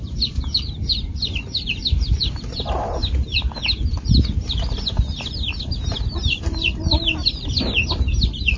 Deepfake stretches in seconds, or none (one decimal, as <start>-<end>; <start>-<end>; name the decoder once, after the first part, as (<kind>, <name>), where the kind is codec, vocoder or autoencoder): 0.0-3.0 (vocoder, BigVGAN v2); 7.9-8.6